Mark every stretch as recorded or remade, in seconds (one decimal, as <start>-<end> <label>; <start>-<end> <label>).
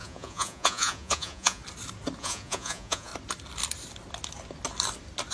0.0-1.6 remade; 1.6-2.2 recorded; 2.2-3.1 remade; 3.1-5.3 recorded